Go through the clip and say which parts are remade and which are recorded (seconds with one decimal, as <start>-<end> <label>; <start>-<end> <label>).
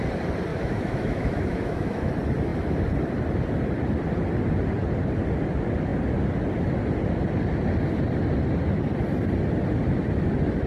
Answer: 0.0-0.5 recorded; 0.5-2.1 remade; 2.1-10.7 recorded